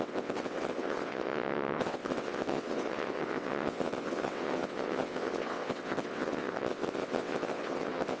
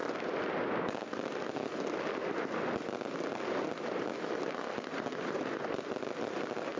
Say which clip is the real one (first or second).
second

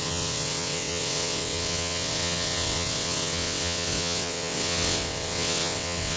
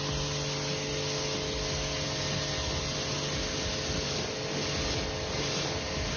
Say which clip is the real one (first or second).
second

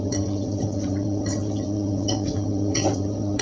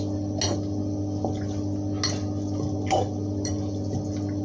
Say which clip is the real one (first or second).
second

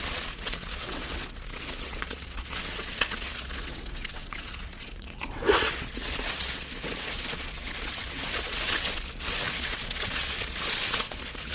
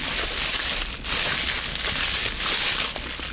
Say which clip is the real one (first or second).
second